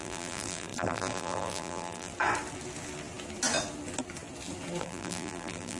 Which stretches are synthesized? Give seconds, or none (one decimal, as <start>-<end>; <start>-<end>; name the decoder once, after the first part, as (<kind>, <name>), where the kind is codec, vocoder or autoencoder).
0.0-2.1 (vocoder, BigVGAN v2); 4.8-5.8